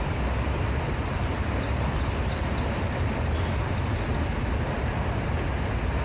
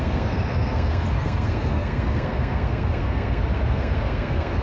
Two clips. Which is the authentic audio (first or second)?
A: first